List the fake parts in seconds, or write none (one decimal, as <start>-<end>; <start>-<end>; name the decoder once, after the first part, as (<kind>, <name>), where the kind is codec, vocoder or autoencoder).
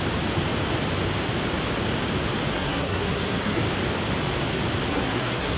2.5-3.6 (codec, SNAC); 4.9-5.6